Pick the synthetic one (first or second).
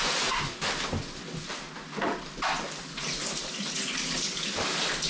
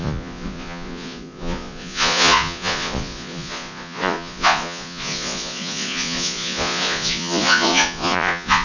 second